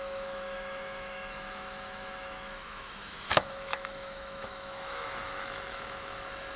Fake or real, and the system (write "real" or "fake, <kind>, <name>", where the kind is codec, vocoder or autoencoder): fake, autoencoder, DAC-VAE